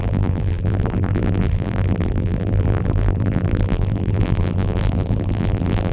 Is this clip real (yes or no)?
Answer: no